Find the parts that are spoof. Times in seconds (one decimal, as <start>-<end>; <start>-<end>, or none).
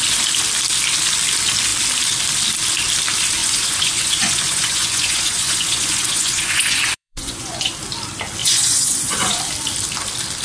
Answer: 3.4-7.7; 8.4-9.4